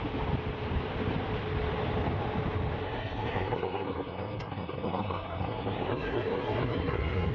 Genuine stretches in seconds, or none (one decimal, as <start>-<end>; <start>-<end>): 0.0-2.8